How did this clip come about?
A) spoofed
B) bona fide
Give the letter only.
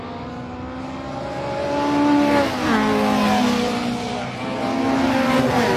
B